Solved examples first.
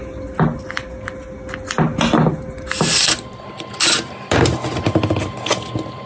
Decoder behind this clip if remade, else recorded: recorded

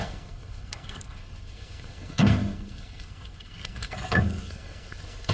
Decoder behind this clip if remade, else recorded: remade, codec, SNAC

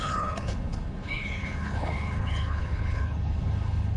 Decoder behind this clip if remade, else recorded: remade, codec, HILCodec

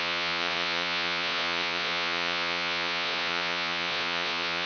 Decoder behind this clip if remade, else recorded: remade, vocoder, Vocos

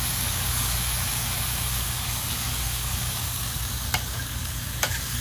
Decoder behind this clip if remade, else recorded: remade, codec, DAC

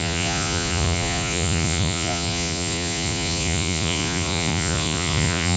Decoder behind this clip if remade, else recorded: remade, vocoder, Vocos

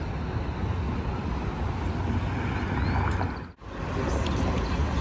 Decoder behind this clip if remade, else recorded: recorded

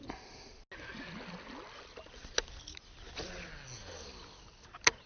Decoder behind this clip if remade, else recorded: recorded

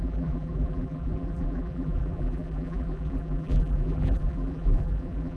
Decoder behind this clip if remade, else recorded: remade, vocoder, BigVGAN v2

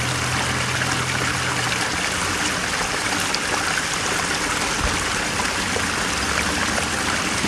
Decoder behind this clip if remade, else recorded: recorded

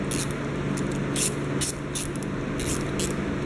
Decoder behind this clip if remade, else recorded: recorded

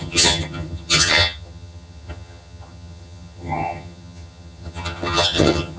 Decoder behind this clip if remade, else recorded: remade, vocoder, HiFi-GAN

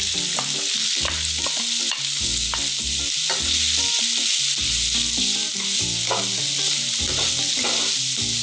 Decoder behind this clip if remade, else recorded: recorded